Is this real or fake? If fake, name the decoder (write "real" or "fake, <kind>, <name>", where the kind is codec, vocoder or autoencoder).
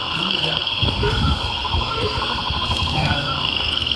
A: fake, codec, SNAC